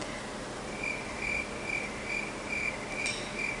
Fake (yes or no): no